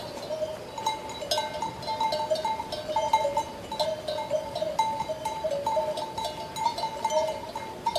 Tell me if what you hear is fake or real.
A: real